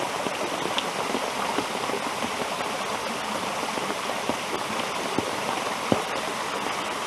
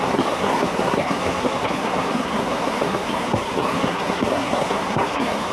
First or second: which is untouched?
first